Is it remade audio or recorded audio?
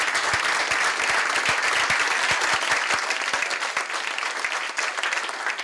recorded